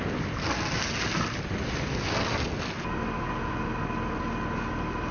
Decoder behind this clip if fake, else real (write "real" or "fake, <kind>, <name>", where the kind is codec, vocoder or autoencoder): real